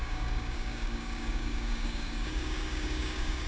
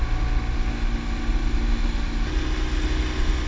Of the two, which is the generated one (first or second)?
first